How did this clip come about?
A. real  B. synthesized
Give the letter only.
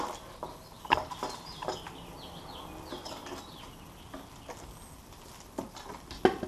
A